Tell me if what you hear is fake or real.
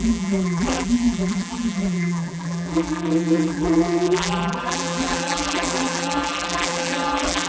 fake